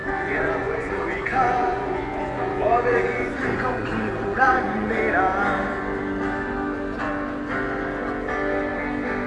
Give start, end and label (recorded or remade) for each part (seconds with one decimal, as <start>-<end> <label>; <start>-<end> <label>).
0.0-5.0 remade; 5.0-9.3 recorded